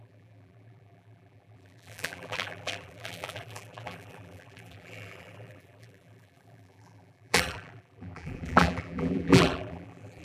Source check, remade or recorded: remade